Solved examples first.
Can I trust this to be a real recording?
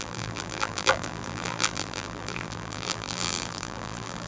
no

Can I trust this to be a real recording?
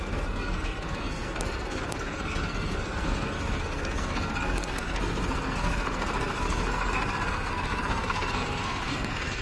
no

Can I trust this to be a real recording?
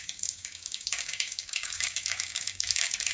no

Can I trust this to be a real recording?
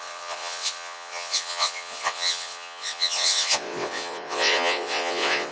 no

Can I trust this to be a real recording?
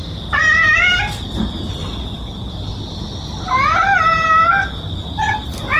yes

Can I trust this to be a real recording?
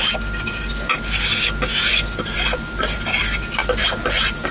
yes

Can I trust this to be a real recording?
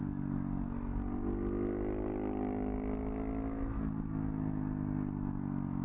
yes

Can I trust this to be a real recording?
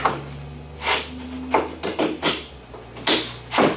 yes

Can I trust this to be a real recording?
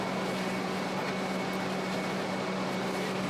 yes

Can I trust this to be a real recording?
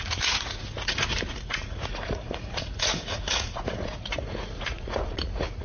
no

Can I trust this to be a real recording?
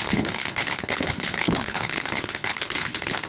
no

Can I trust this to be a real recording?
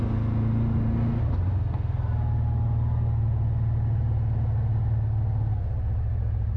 yes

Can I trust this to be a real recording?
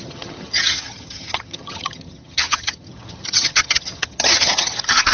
no